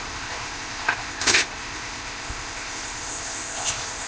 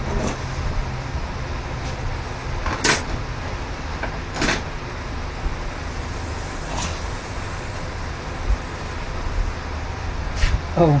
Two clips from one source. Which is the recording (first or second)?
second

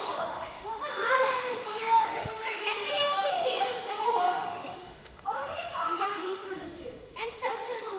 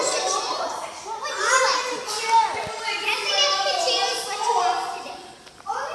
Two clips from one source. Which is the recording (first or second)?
second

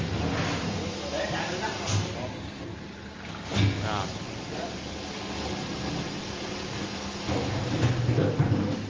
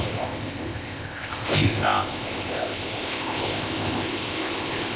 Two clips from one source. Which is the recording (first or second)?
first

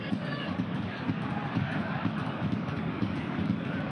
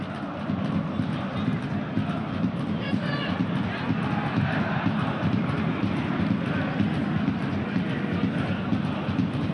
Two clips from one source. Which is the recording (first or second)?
second